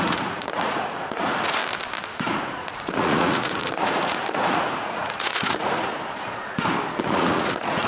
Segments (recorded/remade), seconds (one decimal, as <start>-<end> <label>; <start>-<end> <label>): 0.0-1.6 remade; 1.6-2.3 recorded; 2.3-5.9 remade; 5.9-7.0 recorded; 7.0-7.9 remade